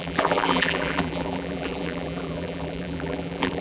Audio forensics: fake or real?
fake